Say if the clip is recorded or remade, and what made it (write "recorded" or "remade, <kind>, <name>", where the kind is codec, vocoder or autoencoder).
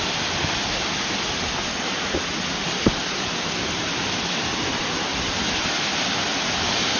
recorded